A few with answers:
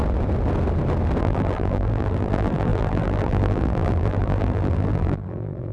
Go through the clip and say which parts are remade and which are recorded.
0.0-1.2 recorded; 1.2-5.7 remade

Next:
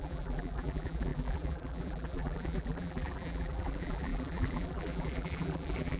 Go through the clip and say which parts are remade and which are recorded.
0.0-6.0 remade